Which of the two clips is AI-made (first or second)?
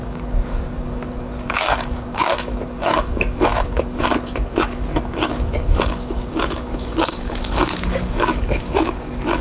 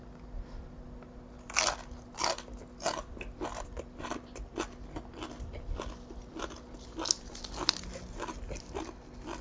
first